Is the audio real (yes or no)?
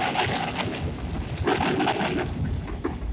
yes